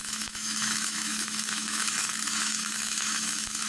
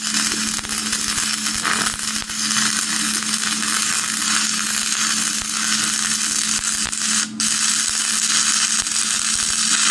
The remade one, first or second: first